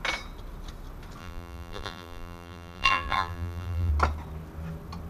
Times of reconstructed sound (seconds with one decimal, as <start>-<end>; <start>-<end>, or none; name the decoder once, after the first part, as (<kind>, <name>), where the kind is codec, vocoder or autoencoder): 1.2-3.9 (vocoder, BigVGAN v2)